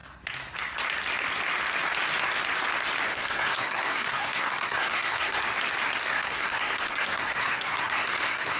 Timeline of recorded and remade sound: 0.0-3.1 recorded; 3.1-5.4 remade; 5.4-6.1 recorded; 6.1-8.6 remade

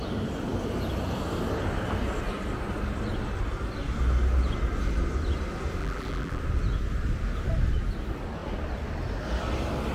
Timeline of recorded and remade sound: 0.0-5.8 recorded; 5.8-6.4 remade; 6.4-9.9 recorded